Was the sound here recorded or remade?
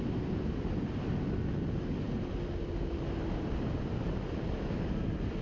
recorded